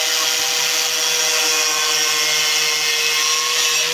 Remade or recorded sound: recorded